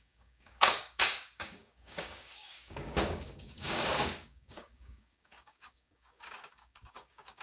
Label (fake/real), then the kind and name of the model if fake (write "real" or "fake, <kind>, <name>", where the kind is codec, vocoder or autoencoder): fake, codec, DAC